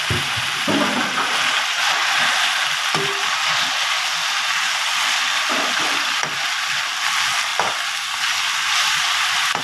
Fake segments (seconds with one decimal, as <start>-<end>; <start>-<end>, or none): 0.0-1.2; 4.7-7.5